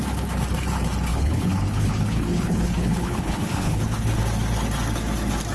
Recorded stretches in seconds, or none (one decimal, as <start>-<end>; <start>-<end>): 0.0-1.1; 4.2-5.5